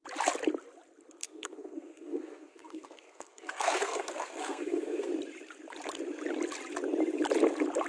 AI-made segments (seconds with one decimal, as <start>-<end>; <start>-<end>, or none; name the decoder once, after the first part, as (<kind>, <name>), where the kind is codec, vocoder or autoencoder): 1.2-5.1 (codec, SNAC)